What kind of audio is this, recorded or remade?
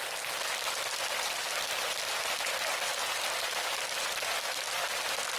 recorded